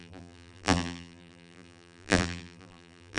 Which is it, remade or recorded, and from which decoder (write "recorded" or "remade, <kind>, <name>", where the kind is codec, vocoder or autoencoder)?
remade, vocoder, BigVGAN v2